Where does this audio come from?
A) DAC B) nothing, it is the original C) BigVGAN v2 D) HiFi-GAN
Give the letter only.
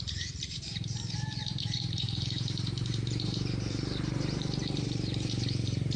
C